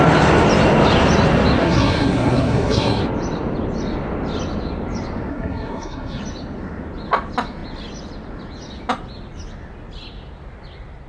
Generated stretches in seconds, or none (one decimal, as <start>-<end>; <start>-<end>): 1.6-3.0; 5.3-6.2